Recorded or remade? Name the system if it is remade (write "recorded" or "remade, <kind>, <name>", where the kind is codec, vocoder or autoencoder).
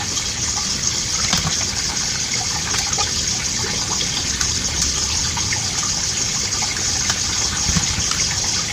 recorded